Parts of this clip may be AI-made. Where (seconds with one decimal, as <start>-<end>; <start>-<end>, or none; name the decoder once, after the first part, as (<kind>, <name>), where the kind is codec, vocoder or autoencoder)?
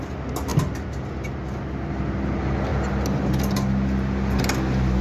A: none